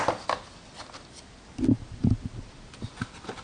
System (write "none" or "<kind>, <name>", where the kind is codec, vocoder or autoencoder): none